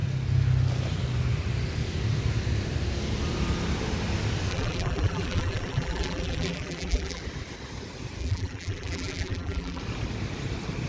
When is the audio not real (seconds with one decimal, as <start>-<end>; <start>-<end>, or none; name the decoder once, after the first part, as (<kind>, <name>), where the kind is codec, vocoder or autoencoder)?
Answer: 4.5-7.2 (vocoder, BigVGAN v2); 8.2-9.8